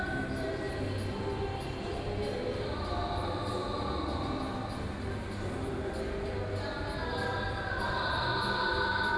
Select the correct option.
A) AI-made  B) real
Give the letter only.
B